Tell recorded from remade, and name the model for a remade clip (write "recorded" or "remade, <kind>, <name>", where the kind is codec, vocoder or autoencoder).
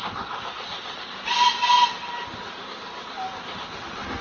recorded